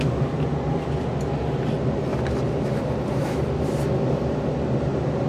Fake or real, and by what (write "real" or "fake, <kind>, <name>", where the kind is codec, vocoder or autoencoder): real